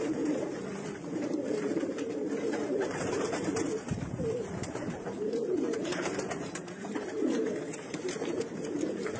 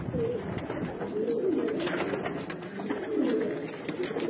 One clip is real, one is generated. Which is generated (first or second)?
first